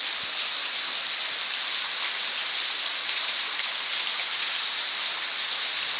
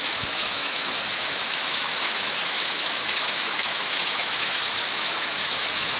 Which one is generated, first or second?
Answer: second